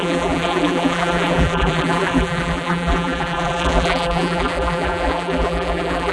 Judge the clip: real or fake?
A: fake